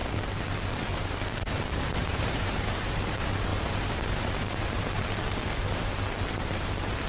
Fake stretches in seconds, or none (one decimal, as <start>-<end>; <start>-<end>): 2.0-2.8; 3.5-4.9